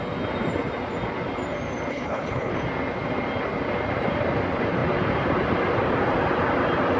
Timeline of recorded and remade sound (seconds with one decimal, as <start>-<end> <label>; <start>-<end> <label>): 0.0-1.9 recorded; 1.9-2.5 remade; 2.5-7.0 recorded